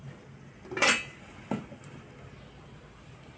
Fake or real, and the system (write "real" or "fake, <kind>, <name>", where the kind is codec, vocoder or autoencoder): real